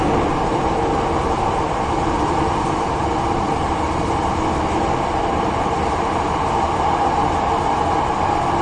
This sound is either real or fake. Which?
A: real